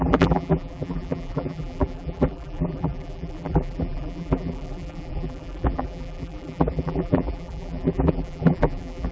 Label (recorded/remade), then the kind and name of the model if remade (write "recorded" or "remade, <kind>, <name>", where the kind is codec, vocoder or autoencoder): remade, vocoder, BigVGAN v2